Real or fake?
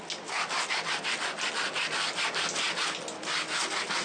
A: real